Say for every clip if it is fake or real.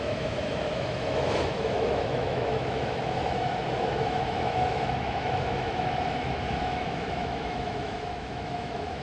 fake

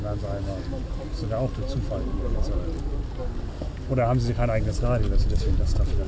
real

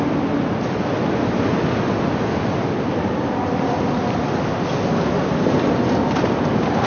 real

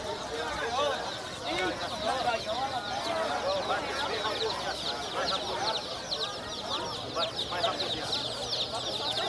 real